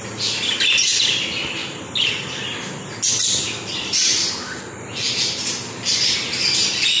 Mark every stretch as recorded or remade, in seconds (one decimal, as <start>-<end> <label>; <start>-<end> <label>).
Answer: 0.0-7.0 recorded